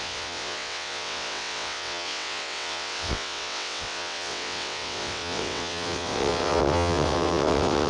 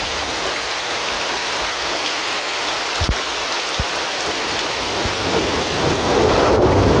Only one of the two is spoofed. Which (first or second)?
first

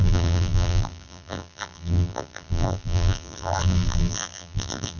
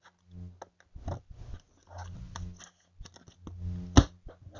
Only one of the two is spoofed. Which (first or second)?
first